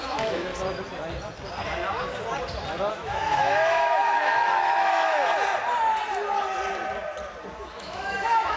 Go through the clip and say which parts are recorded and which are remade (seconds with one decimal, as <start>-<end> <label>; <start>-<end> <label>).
0.0-0.5 remade; 0.5-2.9 recorded; 2.9-5.3 remade; 5.3-7.6 recorded; 7.6-8.6 remade